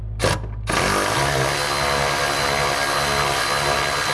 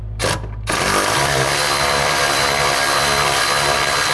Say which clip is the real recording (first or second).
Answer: first